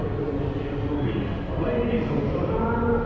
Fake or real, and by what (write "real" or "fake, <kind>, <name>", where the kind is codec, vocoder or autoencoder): real